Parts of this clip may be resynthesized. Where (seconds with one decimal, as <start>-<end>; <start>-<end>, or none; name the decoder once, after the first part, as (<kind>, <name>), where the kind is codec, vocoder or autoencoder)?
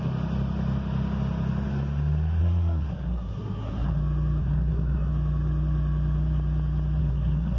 2.4-4.0 (codec, SNAC); 4.4-5.1; 7.0-7.6